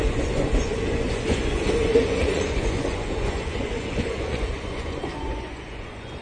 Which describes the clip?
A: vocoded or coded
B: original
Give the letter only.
A